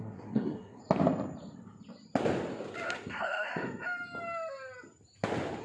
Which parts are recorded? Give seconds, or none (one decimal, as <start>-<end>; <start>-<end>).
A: 0.8-3.1; 3.5-5.6